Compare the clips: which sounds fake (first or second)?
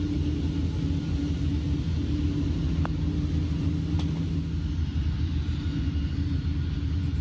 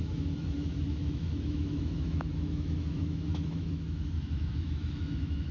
second